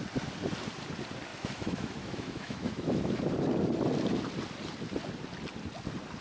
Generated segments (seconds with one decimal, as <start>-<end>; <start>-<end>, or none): 1.3-3.2